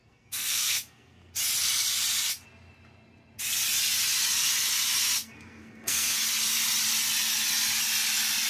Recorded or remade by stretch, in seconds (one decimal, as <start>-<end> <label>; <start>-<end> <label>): 0.0-1.3 remade; 1.3-5.2 recorded; 5.2-6.2 remade; 6.2-8.5 recorded